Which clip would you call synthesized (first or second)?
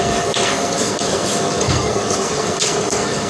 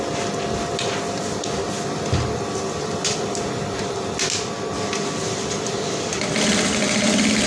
first